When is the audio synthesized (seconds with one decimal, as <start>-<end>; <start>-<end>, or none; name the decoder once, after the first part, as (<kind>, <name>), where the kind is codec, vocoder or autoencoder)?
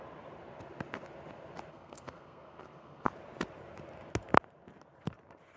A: 1.7-3.1 (codec, SNAC)